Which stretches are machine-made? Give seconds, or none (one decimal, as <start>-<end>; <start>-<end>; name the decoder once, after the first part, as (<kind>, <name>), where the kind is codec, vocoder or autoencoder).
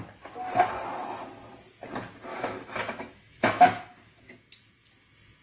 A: 2.3-4.3 (autoencoder, DAC-VAE)